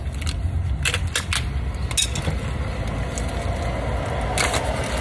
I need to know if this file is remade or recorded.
recorded